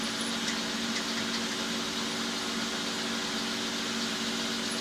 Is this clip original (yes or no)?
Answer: yes